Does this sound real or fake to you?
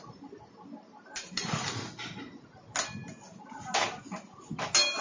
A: real